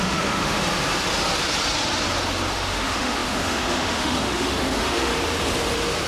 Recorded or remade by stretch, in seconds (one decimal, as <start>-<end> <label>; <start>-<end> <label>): 0.0-0.6 remade; 0.6-2.5 recorded; 2.5-5.1 remade; 5.1-6.1 recorded

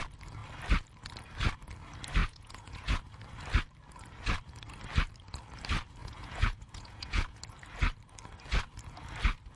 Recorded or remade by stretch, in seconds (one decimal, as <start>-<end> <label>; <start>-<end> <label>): 0.0-2.2 recorded; 2.2-3.0 remade; 3.0-6.0 recorded; 6.0-7.4 remade; 7.4-9.6 recorded